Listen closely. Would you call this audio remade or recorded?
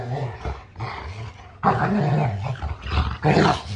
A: recorded